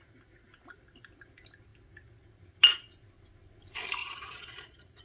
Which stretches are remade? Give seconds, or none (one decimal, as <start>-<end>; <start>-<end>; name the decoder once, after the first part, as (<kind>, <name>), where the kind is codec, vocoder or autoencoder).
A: 4.0-5.0 (vocoder, Vocos)